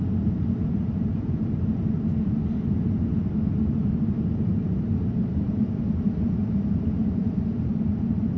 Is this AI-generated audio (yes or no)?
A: yes